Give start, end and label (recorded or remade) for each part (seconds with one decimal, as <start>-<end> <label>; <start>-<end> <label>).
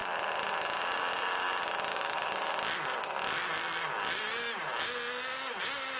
0.0-1.9 recorded; 1.9-2.6 remade; 2.6-6.0 recorded